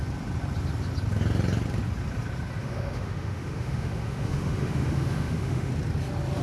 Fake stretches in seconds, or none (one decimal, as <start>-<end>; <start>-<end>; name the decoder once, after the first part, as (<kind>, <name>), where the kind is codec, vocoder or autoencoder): 2.6-5.7 (autoencoder, DAC-VAE)